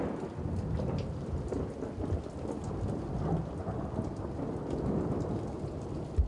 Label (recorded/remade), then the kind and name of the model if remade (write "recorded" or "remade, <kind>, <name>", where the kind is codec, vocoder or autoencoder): recorded